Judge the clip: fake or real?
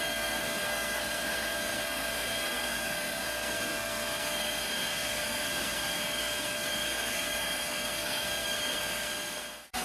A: fake